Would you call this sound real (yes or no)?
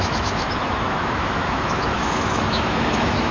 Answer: no